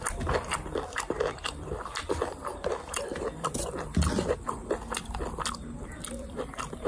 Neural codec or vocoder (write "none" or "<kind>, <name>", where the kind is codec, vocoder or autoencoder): vocoder, BigVGAN v2